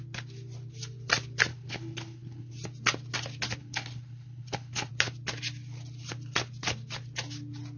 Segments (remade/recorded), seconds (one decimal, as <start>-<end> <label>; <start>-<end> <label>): 0.0-1.5 recorded; 1.5-2.5 remade; 2.5-3.6 recorded; 3.6-4.9 remade; 4.9-7.8 recorded